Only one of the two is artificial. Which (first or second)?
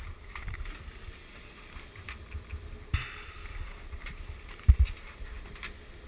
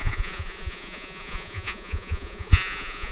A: second